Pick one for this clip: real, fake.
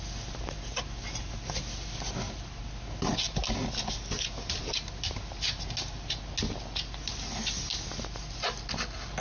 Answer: real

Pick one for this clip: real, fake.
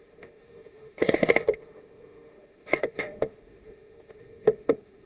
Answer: fake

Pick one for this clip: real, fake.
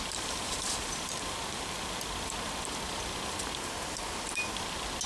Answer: real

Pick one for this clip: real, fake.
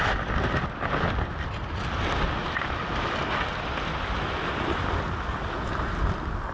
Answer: real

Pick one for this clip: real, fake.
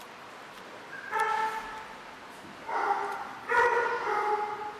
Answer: real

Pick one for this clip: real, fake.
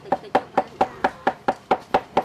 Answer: real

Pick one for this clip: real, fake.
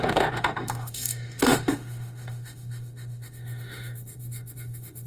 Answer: fake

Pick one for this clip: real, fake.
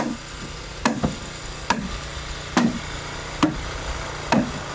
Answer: real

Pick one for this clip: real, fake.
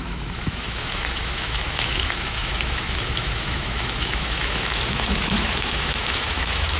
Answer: fake